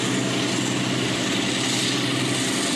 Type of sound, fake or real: real